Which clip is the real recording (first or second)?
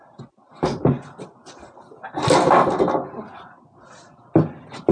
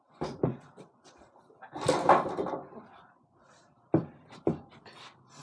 first